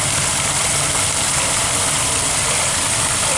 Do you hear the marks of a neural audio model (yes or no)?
no